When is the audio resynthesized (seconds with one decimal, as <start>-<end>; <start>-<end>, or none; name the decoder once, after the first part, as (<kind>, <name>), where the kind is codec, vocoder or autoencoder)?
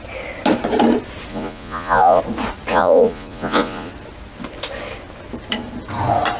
1.3-2.2 (vocoder, Vocos); 2.7-3.9